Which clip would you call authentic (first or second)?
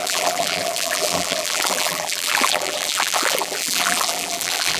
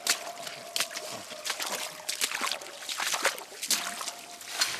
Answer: second